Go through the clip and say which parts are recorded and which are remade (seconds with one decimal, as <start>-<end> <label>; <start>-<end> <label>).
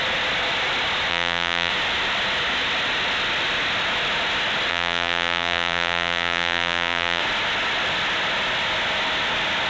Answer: 0.0-1.1 recorded; 1.1-1.7 remade; 1.7-4.7 recorded; 4.7-7.2 remade; 7.2-9.7 recorded